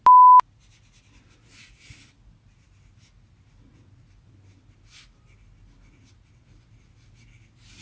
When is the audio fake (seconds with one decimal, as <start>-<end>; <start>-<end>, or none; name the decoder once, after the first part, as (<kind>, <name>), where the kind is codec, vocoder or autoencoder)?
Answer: none